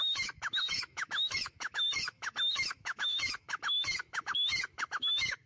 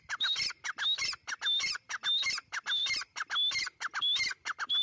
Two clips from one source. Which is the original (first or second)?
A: second